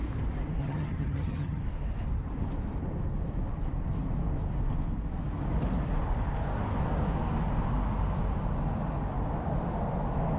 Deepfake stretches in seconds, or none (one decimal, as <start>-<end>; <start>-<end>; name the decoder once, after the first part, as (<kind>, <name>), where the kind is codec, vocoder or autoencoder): 0.6-1.6 (vocoder, HiFi-GAN)